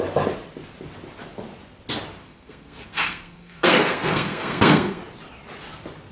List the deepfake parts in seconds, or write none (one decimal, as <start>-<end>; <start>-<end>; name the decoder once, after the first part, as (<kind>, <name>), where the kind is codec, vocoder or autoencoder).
2.2-5.0 (codec, SNAC)